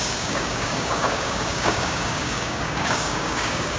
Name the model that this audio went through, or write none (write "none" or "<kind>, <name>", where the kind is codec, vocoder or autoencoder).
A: codec, DAC